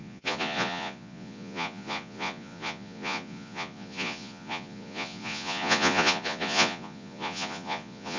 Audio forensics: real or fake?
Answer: fake